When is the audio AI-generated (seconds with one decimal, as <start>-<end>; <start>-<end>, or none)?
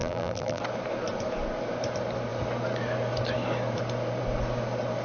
0.0-0.6